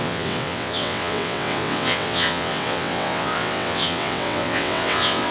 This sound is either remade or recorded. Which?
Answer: remade